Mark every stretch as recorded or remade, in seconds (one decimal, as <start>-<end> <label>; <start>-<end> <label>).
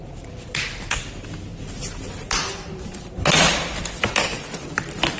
0.0-5.2 recorded